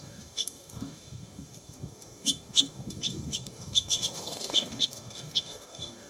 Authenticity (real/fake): fake